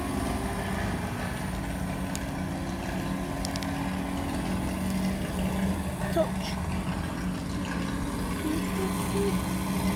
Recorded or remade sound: recorded